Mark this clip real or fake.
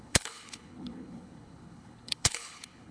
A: fake